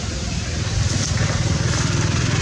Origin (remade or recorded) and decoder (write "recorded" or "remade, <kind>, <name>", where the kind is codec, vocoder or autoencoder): recorded